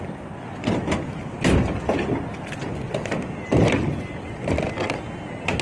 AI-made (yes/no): no